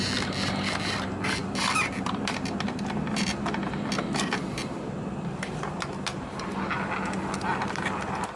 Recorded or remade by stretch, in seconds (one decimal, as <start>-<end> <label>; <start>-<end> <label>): 0.0-8.4 recorded

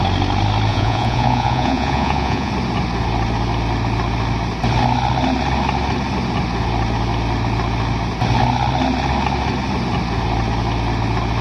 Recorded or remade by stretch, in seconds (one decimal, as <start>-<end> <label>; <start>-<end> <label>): 0.0-0.7 recorded; 0.7-2.5 remade; 2.5-11.4 recorded

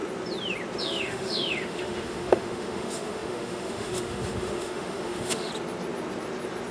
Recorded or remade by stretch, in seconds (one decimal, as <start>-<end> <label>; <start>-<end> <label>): 0.0-0.8 recorded; 0.8-5.5 remade; 5.5-6.7 recorded

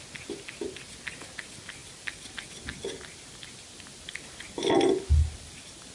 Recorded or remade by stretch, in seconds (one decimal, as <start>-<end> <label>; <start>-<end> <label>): 0.0-5.9 recorded

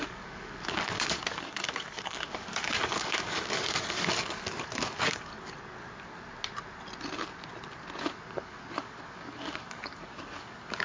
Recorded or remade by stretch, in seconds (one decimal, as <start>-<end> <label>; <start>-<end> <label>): 0.0-5.3 remade; 5.3-8.1 recorded; 8.1-10.8 remade

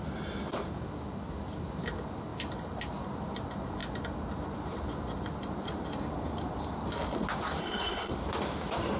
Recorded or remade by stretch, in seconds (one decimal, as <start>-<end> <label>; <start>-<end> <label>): 0.0-7.6 recorded; 7.6-8.1 remade; 8.1-9.0 recorded

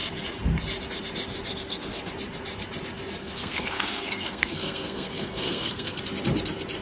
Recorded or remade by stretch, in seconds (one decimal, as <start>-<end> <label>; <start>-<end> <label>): 0.0-1.5 recorded; 1.5-2.1 remade; 2.1-3.2 recorded; 3.2-6.0 remade; 6.0-6.8 recorded

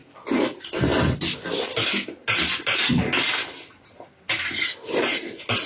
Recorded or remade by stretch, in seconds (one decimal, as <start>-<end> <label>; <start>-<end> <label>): 0.0-5.7 recorded